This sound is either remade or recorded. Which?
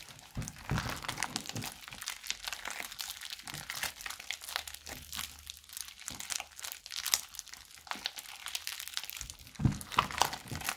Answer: recorded